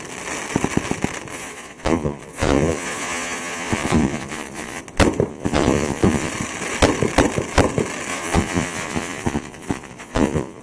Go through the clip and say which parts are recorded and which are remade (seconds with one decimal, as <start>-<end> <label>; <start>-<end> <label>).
0.0-1.3 recorded; 1.3-4.8 remade; 4.8-5.3 recorded; 5.3-6.3 remade; 6.3-8.1 recorded; 8.1-10.6 remade